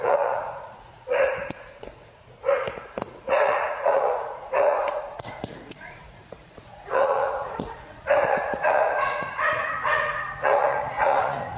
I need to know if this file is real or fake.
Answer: fake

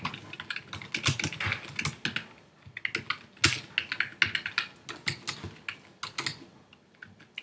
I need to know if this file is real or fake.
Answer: real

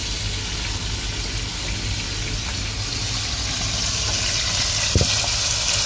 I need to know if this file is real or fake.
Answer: real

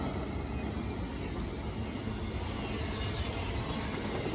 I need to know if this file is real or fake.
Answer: real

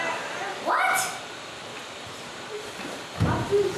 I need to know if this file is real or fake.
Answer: fake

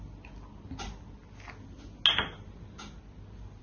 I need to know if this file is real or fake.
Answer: real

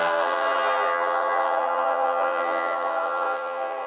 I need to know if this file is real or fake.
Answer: fake